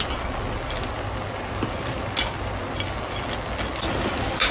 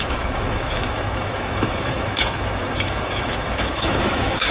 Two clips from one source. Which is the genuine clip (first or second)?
first